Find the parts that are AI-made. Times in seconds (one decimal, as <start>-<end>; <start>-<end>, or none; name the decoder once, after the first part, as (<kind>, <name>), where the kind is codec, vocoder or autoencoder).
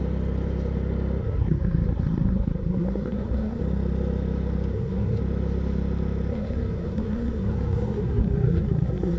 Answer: 1.2-3.6 (codec, SNAC); 4.7-5.2; 6.3-9.2